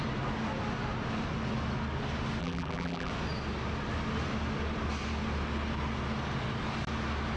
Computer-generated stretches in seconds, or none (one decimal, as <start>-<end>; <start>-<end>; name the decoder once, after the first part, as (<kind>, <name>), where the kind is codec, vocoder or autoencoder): 2.4-3.1 (vocoder, BigVGAN v2)